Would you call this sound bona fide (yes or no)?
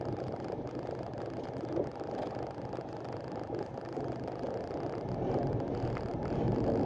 yes